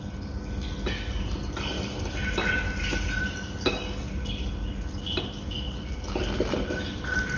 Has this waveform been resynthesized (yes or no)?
no